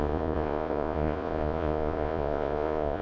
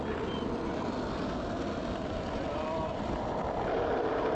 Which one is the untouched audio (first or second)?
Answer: second